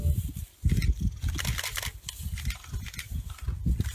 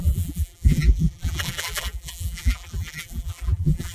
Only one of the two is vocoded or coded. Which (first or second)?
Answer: second